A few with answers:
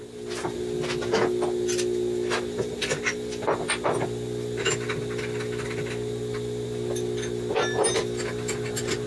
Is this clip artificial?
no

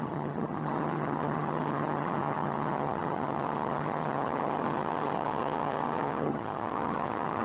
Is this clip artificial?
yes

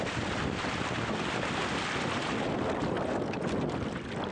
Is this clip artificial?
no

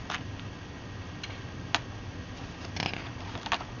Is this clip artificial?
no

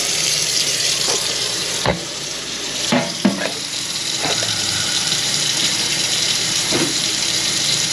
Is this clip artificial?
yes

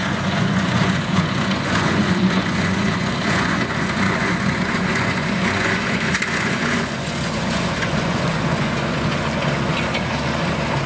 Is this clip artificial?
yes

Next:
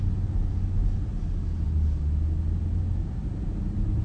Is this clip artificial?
no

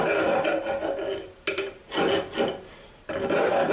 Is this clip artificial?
no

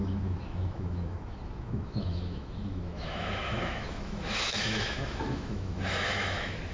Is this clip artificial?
yes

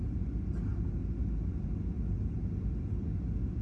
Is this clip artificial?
no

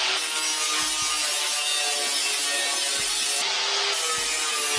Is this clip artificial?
no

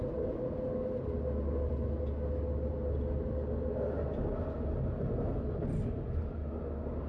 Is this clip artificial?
no